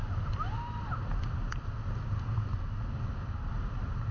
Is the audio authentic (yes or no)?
yes